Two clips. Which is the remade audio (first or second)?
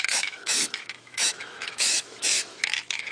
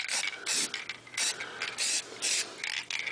first